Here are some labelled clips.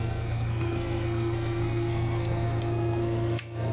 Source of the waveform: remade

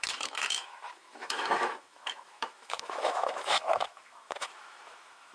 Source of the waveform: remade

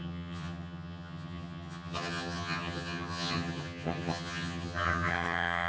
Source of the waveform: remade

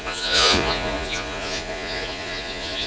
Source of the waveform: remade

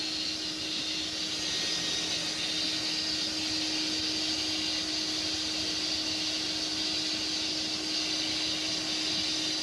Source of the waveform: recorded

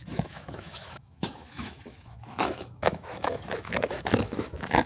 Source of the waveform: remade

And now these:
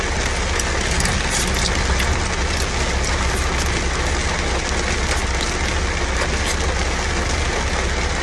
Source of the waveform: recorded